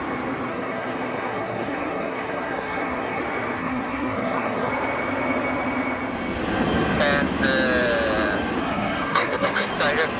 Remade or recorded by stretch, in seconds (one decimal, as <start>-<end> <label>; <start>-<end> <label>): 0.0-0.5 recorded; 0.5-3.2 remade; 3.2-3.6 recorded; 3.6-4.7 remade; 4.7-8.6 recorded; 8.6-9.7 remade; 9.7-10.2 recorded